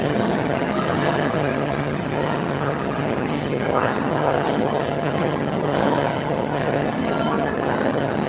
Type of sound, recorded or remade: remade